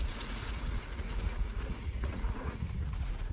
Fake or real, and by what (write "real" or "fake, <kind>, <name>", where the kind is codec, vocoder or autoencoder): fake, vocoder, Vocos